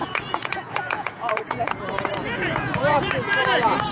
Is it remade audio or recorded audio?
remade